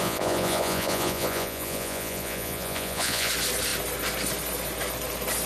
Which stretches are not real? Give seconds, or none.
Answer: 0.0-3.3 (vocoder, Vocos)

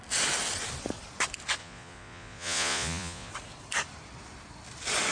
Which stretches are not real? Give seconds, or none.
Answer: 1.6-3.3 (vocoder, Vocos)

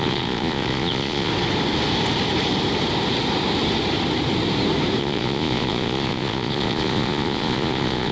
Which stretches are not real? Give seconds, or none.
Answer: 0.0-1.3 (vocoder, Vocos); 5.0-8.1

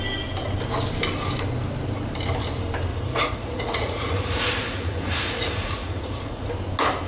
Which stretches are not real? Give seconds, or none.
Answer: 2.9-6.5 (vocoder, Vocos)

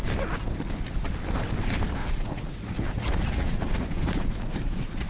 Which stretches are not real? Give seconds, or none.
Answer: 2.0-5.1 (vocoder, Vocos)